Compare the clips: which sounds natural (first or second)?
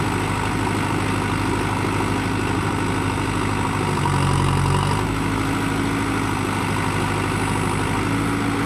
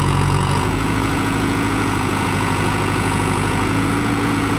first